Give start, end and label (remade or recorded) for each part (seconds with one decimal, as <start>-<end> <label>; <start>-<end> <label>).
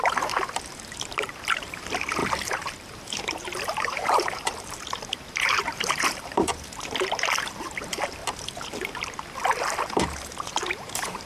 0.0-8.2 remade; 8.2-9.6 recorded; 9.6-11.3 remade